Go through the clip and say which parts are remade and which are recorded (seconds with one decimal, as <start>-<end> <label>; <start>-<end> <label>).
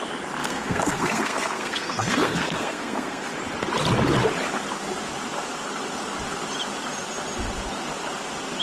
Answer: 0.0-0.4 recorded; 0.4-3.3 remade; 3.3-8.6 recorded